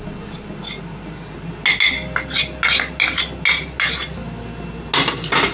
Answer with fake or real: real